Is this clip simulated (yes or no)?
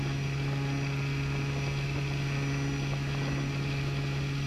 no